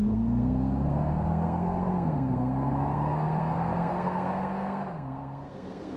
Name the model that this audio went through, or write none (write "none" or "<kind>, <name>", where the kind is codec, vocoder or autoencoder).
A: codec, SNAC